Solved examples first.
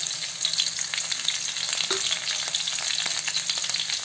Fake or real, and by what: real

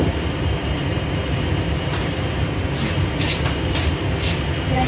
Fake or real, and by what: real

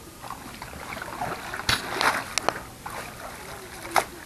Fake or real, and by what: real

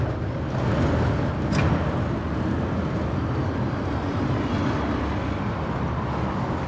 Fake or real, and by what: real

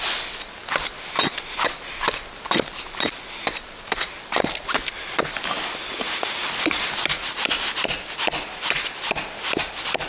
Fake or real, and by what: real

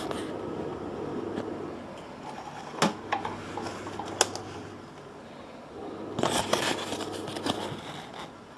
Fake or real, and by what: real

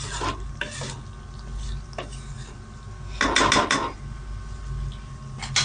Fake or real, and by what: real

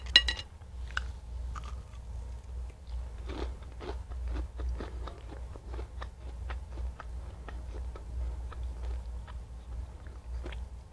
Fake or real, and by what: real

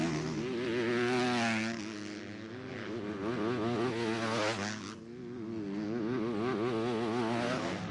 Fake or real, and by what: real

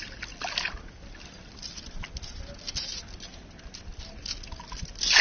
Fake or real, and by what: real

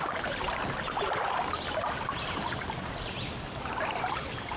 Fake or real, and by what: real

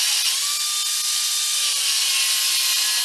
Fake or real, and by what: real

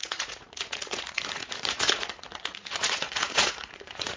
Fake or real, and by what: fake, vocoder, Vocos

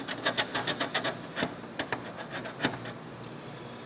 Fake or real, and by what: real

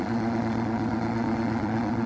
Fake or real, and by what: fake, vocoder, Vocos